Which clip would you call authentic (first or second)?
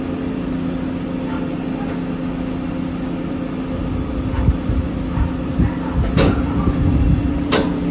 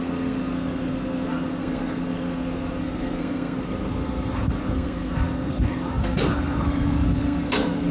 first